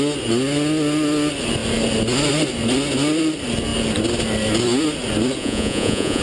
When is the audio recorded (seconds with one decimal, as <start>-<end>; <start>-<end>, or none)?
0.0-5.4